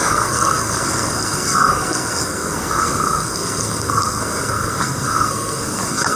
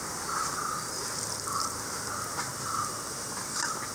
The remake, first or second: first